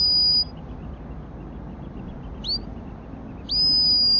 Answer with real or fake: real